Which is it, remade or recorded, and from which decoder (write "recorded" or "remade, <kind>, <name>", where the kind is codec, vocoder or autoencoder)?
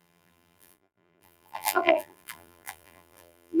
remade, vocoder, BigVGAN v2